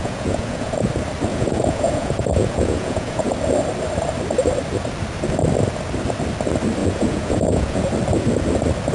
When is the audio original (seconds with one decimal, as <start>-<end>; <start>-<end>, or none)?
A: 0.9-1.3; 3.3-6.8; 7.9-8.9